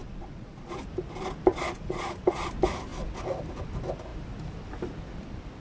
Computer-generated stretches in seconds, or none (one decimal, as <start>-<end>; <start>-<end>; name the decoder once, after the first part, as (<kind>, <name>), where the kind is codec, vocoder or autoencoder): 0.0-0.8 (vocoder, Vocos); 1.5-2.5